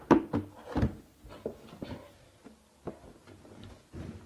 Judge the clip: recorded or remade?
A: recorded